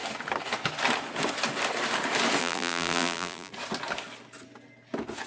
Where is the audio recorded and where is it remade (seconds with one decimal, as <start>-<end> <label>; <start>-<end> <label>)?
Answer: 0.0-2.4 recorded; 2.4-3.5 remade; 3.5-5.3 recorded